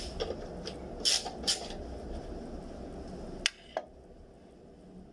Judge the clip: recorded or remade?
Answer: recorded